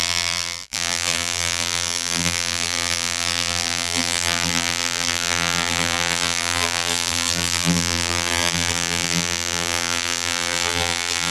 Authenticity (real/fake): fake